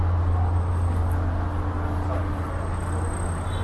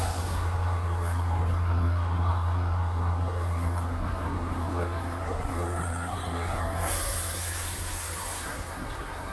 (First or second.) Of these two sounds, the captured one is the first